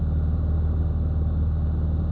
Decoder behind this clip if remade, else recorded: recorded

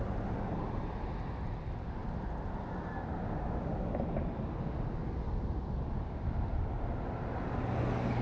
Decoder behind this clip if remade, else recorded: recorded